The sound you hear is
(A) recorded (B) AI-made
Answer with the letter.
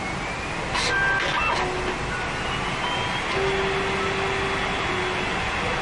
A